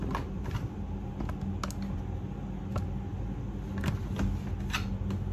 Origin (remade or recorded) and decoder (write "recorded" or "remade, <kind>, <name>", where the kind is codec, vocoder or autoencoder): recorded